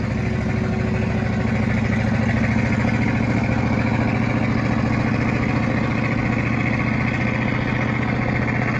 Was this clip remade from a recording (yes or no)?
no